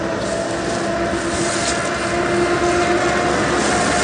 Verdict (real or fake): real